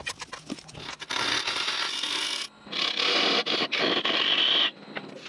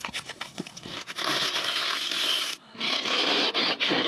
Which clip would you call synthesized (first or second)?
second